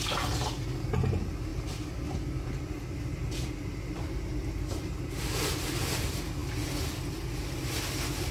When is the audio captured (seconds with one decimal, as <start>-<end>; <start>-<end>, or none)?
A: 0.0-8.3